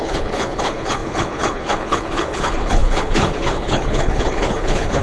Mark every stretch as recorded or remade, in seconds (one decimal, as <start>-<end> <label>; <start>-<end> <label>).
0.0-5.0 remade